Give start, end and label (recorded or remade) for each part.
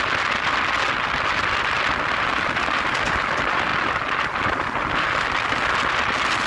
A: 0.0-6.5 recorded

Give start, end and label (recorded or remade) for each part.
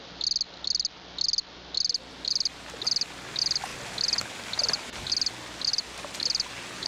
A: 0.0-6.9 recorded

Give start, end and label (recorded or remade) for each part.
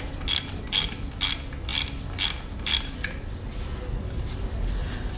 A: 0.0-5.2 recorded